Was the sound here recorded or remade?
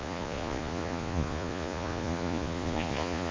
remade